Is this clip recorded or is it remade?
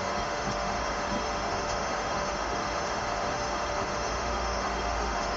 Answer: remade